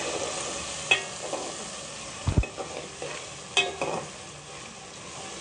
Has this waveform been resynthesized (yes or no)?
no